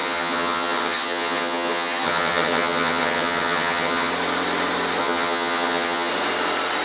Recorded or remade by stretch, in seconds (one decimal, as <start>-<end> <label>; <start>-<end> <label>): 0.0-4.1 remade; 4.1-5.0 recorded; 5.0-6.1 remade; 6.1-6.8 recorded

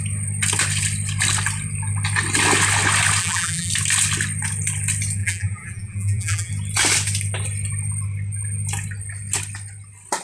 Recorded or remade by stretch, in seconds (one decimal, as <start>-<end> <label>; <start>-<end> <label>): 0.0-3.2 recorded; 3.2-3.7 remade; 3.7-5.2 recorded; 5.2-6.5 remade; 6.5-10.2 recorded